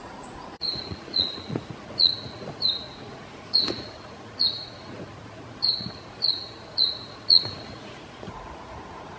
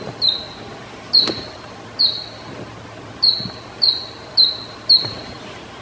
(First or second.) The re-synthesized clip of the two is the first